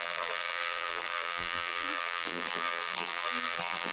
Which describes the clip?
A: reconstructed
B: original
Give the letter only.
A